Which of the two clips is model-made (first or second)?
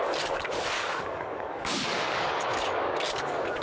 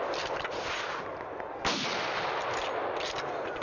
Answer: first